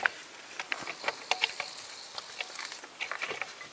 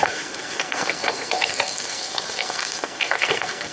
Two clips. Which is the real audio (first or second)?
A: first